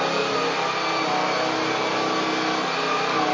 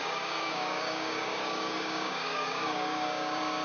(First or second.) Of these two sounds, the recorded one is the first